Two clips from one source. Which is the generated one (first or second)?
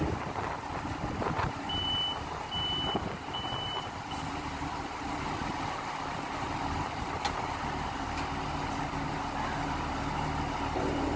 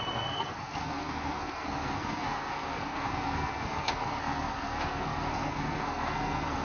second